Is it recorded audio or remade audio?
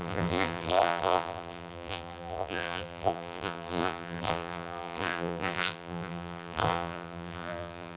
remade